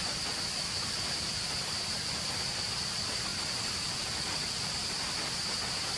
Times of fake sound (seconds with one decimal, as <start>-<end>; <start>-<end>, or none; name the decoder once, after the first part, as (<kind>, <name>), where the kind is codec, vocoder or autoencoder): none